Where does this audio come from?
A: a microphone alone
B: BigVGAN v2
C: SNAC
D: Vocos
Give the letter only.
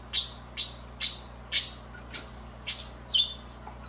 A